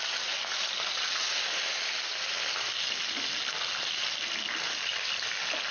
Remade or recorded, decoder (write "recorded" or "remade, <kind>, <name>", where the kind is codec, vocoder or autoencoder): recorded